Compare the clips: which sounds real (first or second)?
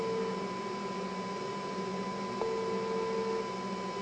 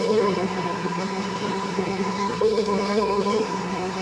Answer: first